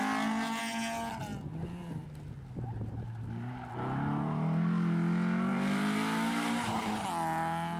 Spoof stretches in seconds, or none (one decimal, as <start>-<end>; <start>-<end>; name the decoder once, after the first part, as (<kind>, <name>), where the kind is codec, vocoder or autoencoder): 5.5-7.1 (vocoder, BigVGAN v2)